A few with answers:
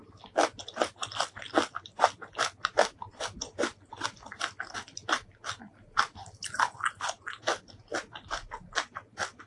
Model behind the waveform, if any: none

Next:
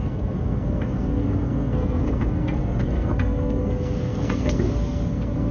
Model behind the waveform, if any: codec, SNAC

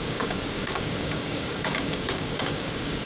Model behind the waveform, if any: codec, DAC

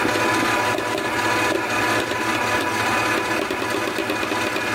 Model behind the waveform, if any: none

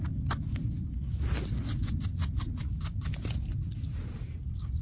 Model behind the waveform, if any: none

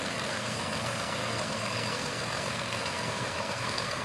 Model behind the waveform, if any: codec, SNAC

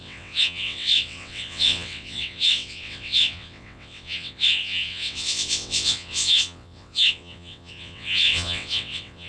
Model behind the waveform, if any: vocoder, WaveNeXt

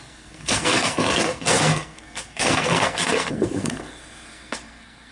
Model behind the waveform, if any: codec, SNAC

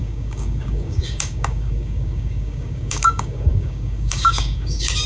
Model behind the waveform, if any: codec, DAC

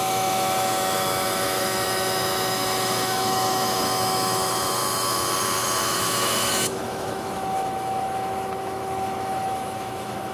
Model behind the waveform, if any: autoencoder, DAC-VAE